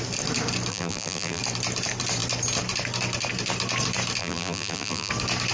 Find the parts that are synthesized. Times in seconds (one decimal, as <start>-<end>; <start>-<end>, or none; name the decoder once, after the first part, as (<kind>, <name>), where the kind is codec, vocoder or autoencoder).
0.7-1.4 (vocoder, BigVGAN v2); 4.2-5.1